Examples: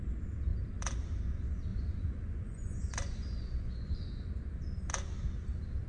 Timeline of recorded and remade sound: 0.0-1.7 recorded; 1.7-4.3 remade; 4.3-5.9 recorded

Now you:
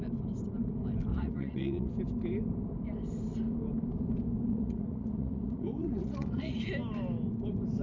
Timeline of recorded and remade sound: 0.0-1.1 recorded; 1.1-1.9 remade; 1.9-4.5 recorded; 4.5-6.6 remade; 6.6-7.8 recorded

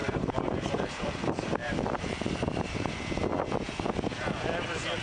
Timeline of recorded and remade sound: 0.0-2.9 remade; 2.9-5.0 recorded

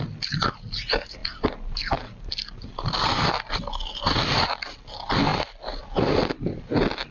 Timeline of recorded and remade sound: 0.0-7.1 recorded

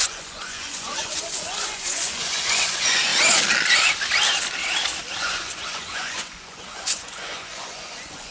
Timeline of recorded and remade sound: 0.0-3.1 remade; 3.1-5.2 recorded; 5.2-8.3 remade